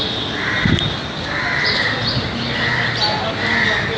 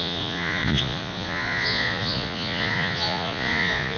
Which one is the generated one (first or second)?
second